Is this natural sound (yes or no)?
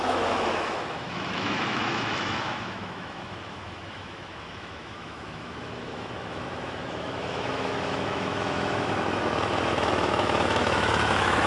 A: no